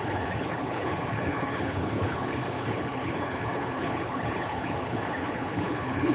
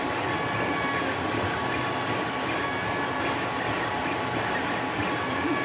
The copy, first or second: first